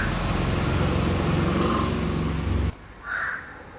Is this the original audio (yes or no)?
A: yes